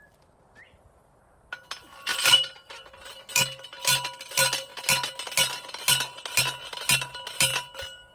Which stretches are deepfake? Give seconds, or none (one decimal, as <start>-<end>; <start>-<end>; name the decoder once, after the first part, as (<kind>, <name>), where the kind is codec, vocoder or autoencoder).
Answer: 2.1-2.9 (vocoder, BigVGAN v2)